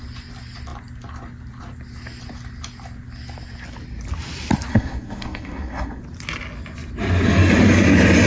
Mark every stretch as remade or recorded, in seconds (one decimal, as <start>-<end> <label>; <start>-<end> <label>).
0.0-4.7 recorded; 4.7-6.0 remade; 6.0-8.3 recorded